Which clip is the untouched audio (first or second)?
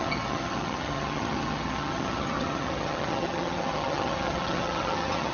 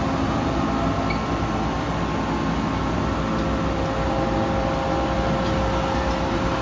second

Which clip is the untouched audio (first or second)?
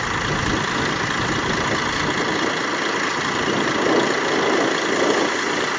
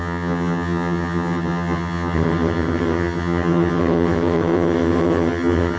first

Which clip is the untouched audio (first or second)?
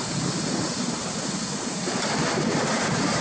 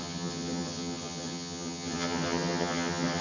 first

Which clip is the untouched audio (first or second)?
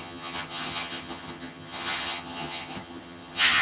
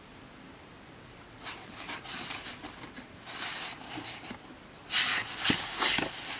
second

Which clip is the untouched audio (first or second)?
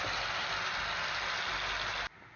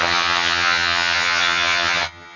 first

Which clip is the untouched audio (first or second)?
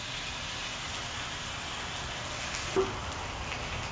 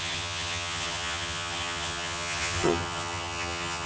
first